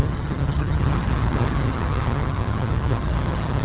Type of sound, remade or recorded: remade